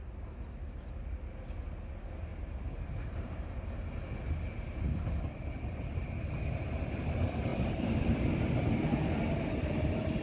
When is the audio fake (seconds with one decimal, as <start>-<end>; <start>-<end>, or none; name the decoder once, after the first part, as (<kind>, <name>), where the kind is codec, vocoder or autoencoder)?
2.3-3.5 (vocoder, BigVGAN v2)

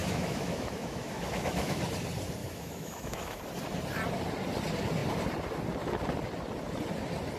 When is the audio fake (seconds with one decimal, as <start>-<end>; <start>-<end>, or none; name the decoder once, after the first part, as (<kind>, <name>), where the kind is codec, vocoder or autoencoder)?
0.0-1.8 (autoencoder, DAC-VAE); 2.4-3.4

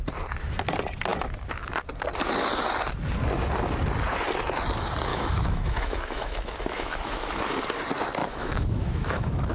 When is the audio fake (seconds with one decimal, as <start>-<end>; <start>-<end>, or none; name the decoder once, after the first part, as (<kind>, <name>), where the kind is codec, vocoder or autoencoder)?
5.1-7.6 (autoencoder, DAC-VAE); 8.2-9.5

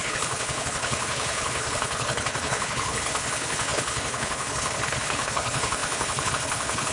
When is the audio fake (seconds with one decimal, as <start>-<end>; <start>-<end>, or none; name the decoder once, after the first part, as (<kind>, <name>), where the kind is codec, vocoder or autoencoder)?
0.0-6.9 (codec, HILCodec)

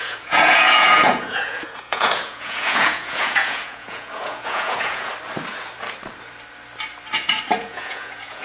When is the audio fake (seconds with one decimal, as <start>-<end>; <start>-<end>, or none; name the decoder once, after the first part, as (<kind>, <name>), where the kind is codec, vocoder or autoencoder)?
0.0-5.1 (vocoder, Vocos); 7.6-8.4